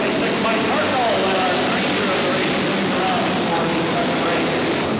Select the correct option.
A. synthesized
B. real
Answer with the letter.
B